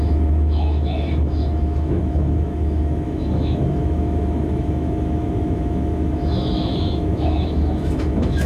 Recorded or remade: remade